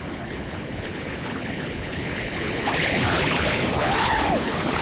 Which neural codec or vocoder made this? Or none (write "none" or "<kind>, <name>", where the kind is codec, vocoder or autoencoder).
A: codec, HILCodec